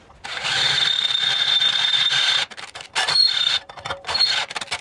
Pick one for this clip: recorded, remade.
remade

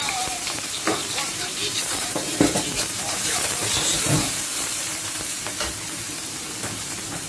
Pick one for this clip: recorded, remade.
remade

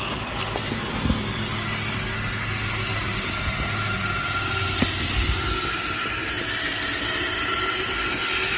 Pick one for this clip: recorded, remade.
recorded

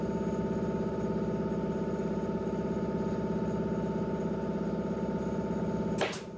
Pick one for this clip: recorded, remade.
recorded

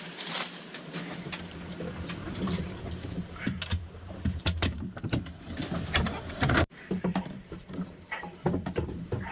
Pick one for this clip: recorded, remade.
remade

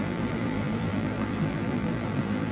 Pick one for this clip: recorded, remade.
remade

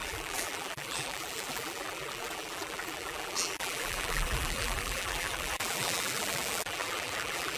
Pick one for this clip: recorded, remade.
remade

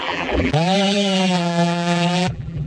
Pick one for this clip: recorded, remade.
remade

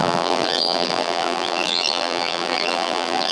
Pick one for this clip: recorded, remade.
remade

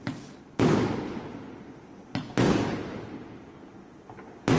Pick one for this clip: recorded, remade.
recorded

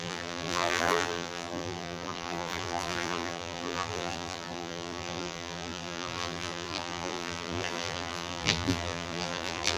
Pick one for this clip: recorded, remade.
remade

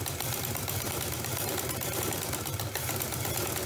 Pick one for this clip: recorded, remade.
remade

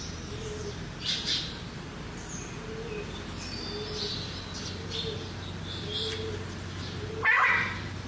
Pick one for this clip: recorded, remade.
recorded